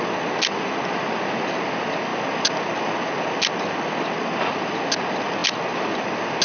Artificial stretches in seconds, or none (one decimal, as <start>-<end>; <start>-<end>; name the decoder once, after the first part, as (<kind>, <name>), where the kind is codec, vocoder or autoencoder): none